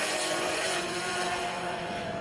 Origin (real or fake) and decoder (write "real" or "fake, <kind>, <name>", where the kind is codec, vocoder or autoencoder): fake, vocoder, Vocos